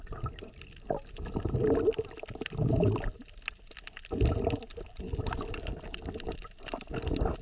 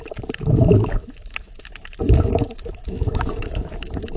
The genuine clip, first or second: first